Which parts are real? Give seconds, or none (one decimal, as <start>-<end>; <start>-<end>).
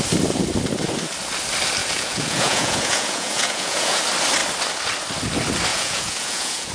0.0-1.8; 4.0-5.7